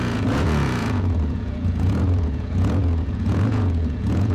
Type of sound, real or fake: fake